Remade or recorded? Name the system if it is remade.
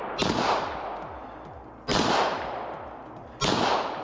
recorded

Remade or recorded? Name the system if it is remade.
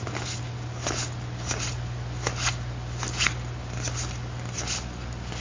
recorded